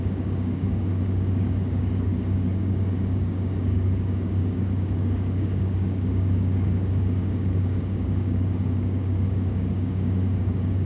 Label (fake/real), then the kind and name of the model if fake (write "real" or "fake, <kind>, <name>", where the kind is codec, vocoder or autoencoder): fake, codec, DAC